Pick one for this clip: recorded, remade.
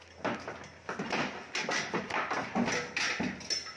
recorded